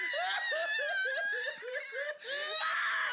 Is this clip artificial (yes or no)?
no